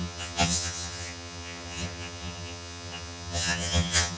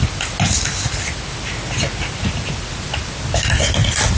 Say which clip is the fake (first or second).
first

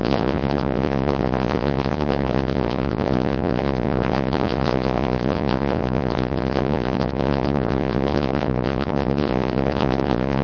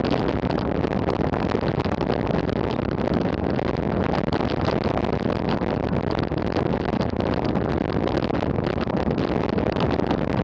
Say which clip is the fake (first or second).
first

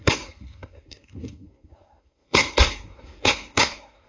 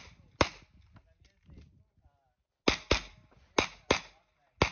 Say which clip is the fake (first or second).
first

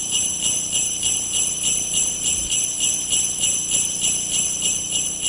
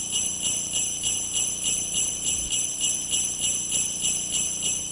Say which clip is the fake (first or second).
first